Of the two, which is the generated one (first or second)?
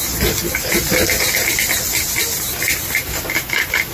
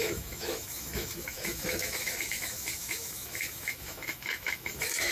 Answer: second